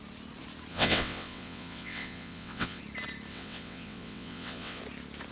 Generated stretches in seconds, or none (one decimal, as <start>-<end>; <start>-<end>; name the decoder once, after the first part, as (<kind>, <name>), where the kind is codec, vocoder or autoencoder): 0.7-2.8 (vocoder, WaveNeXt); 3.3-4.8